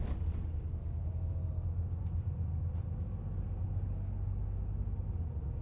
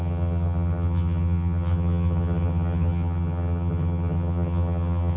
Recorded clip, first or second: first